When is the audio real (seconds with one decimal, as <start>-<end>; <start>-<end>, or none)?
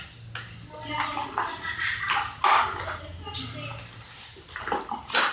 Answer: 0.0-5.3